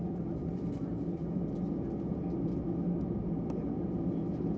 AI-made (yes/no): no